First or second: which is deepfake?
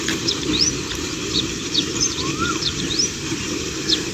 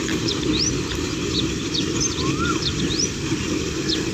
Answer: first